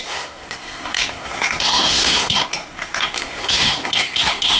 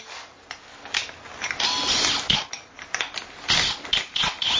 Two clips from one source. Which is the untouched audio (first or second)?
second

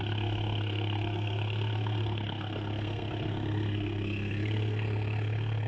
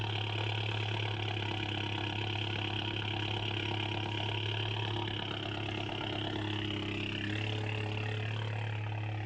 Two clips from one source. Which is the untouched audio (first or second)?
second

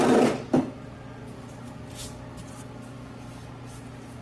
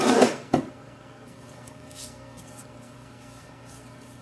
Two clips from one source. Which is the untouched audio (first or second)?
first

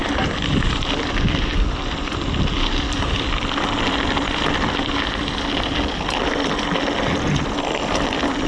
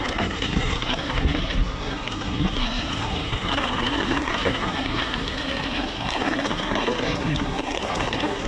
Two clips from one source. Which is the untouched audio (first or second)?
first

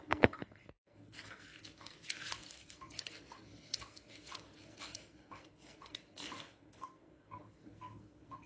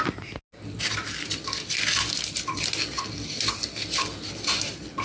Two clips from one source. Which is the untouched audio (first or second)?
second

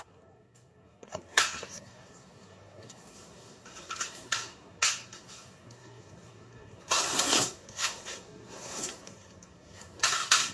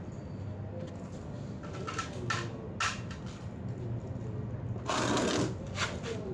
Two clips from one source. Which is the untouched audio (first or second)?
second